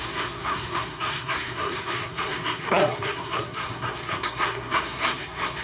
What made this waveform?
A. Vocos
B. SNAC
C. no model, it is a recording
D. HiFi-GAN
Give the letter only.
B